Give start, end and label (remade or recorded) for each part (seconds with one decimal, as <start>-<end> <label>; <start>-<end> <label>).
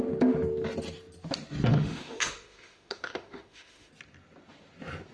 0.0-1.7 recorded; 1.7-3.9 remade; 3.9-5.1 recorded